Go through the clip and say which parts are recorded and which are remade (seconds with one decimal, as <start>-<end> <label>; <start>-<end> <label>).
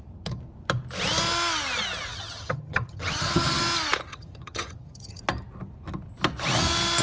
0.0-2.1 recorded; 2.1-3.6 remade; 3.6-4.1 recorded; 4.1-5.2 remade; 5.2-7.0 recorded